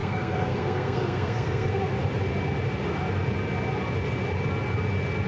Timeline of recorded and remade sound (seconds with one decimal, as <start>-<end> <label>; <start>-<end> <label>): 0.0-1.8 remade; 1.8-5.3 recorded